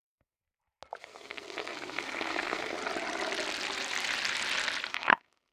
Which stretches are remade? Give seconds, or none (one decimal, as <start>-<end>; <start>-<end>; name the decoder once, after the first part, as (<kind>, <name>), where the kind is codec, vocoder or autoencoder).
0.0-0.4 (codec, SNAC); 1.0-2.8; 4.9-5.5